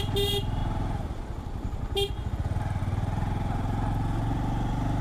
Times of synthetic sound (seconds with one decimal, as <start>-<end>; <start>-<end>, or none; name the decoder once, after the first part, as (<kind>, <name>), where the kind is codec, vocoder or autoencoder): none